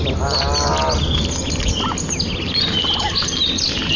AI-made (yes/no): no